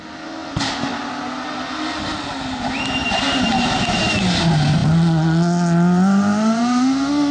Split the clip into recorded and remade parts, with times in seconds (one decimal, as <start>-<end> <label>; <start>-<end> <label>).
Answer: 0.0-3.0 recorded; 3.0-4.0 remade; 4.0-7.3 recorded